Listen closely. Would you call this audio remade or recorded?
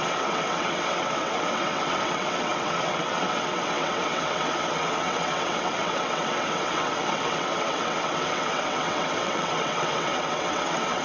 remade